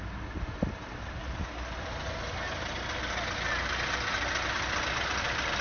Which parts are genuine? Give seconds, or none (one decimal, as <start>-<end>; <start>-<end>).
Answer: 0.0-5.6